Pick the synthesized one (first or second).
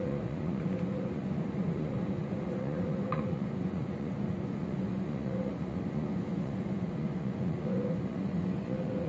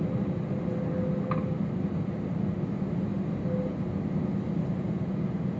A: first